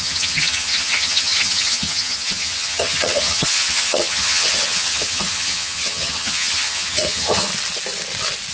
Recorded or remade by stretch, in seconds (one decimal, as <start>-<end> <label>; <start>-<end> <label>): 0.0-7.5 remade; 7.5-8.5 recorded